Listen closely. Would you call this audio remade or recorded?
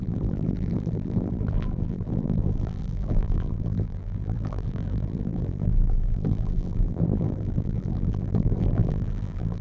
remade